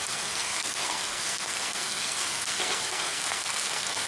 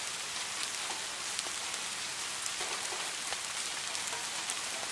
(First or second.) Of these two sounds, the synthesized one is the first